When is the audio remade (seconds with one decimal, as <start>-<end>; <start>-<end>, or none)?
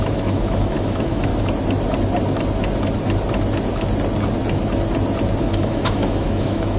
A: 0.0-1.3; 5.4-6.8